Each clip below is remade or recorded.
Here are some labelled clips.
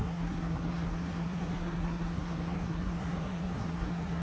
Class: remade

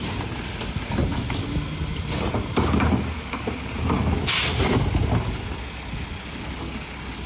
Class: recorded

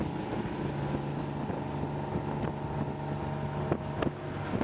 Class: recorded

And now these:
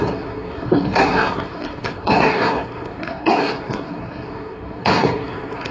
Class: remade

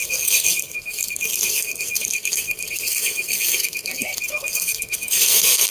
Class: remade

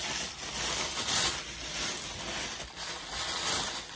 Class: recorded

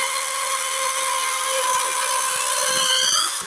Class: recorded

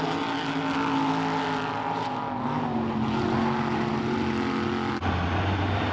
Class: recorded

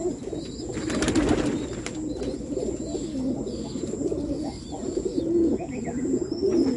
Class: recorded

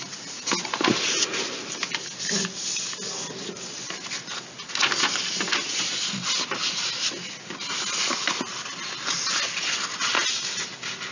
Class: recorded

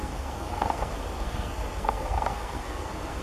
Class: remade